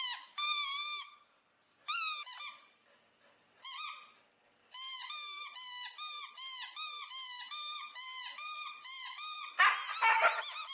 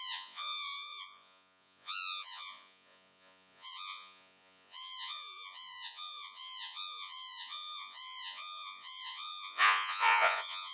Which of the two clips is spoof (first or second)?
second